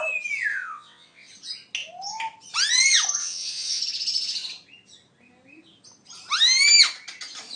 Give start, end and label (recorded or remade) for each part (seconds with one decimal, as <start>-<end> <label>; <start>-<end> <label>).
0.0-0.5 recorded; 0.5-1.3 remade; 1.3-3.2 recorded; 3.2-3.8 remade; 3.8-7.6 recorded